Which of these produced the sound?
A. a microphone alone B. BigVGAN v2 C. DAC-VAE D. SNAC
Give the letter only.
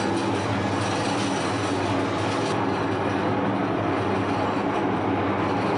A